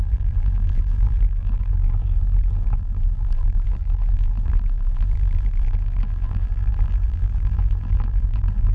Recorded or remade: remade